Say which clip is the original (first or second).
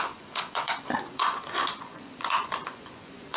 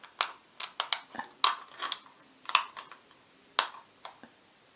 second